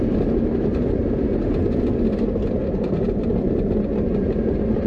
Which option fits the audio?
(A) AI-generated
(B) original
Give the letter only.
B